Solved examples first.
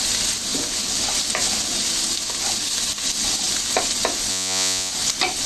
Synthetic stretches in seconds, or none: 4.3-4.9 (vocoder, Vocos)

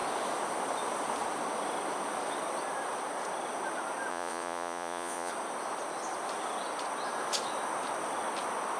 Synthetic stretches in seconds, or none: 4.1-5.3 (vocoder, Vocos)

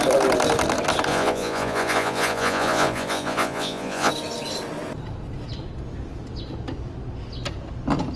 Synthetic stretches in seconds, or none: 1.1-4.1 (vocoder, Vocos)

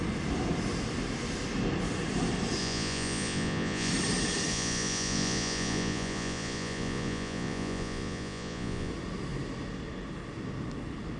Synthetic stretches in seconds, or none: 2.6-3.9 (vocoder, Vocos); 4.5-8.9